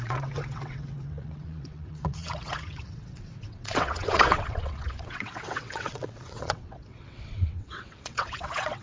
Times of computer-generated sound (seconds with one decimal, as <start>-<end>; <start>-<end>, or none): 0.0-8.8